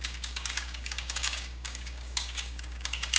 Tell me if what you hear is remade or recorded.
remade